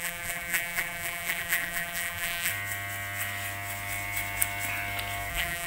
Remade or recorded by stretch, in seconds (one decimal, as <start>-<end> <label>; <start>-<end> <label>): 0.0-2.5 remade; 2.5-5.3 recorded; 5.3-5.7 remade